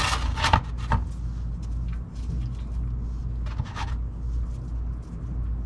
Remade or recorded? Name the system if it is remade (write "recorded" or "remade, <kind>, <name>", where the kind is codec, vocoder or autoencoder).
recorded